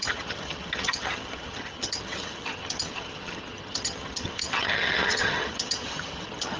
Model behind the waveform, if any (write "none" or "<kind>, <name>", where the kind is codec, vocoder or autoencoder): vocoder, HiFi-GAN